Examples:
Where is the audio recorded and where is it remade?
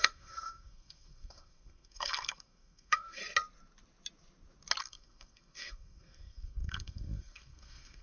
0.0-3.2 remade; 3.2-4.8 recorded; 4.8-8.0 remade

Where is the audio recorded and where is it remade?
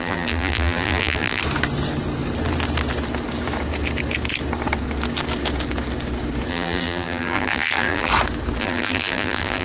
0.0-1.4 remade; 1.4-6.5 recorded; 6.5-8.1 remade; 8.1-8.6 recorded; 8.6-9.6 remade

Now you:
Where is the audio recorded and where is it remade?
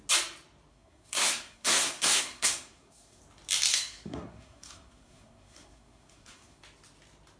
0.0-0.7 recorded; 0.7-3.2 remade; 3.2-3.7 recorded; 3.7-6.6 remade; 6.6-7.4 recorded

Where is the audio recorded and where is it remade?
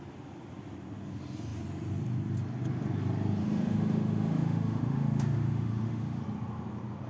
0.0-3.4 recorded; 3.4-6.2 remade; 6.2-7.1 recorded